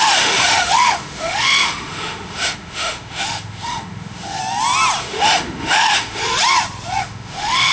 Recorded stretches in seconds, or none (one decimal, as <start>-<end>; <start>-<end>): 4.4-5.0; 6.2-7.0

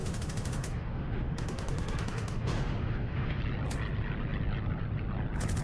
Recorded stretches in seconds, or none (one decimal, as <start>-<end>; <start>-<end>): 3.4-5.6

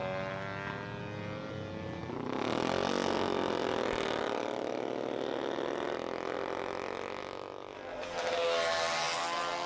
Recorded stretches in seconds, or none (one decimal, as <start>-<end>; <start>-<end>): 0.0-9.7

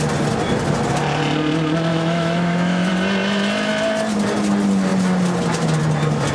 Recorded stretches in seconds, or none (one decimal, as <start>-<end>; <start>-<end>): 0.0-1.9; 2.9-6.3

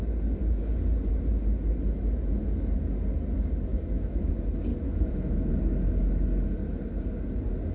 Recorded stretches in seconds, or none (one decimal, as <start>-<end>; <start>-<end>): 0.0-3.7; 4.3-4.7; 5.5-7.7

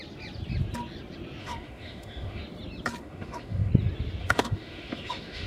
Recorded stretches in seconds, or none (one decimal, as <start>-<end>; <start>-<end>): 0.0-1.4; 2.4-3.0; 3.7-4.2